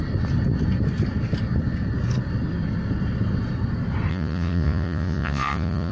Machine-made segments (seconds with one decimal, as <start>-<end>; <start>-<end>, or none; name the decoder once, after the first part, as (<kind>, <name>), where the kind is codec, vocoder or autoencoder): 4.1-5.9 (vocoder, Vocos)